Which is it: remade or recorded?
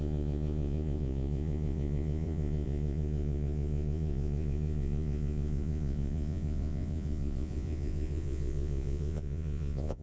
remade